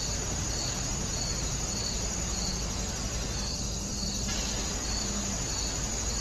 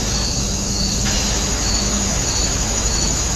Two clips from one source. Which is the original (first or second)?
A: first